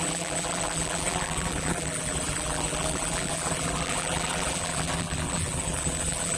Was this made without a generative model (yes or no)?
no